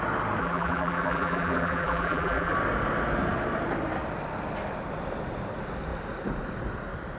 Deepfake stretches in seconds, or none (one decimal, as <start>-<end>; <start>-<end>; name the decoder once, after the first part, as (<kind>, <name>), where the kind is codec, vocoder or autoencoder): 0.4-2.5 (vocoder, BigVGAN v2)